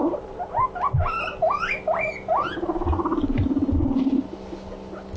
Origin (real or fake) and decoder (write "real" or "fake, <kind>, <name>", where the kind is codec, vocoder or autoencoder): real